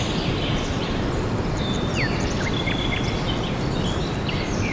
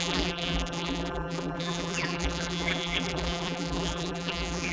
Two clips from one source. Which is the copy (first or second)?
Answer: second